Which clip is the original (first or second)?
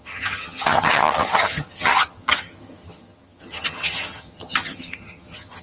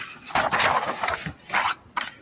second